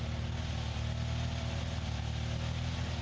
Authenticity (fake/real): real